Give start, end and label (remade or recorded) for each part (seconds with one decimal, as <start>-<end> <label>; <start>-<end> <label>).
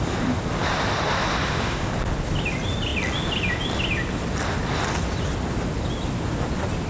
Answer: 0.0-1.4 recorded; 1.4-1.9 remade; 1.9-6.9 recorded